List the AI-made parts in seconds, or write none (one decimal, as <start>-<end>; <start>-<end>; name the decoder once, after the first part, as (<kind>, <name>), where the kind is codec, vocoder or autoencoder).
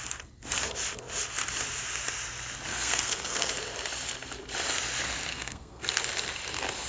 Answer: 2.7-3.5 (codec, SNAC); 5.3-6.0